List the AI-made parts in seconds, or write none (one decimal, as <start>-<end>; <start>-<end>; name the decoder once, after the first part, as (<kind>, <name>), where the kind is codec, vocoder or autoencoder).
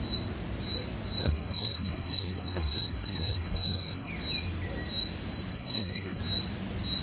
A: 1.2-4.1 (codec, SNAC); 5.5-6.2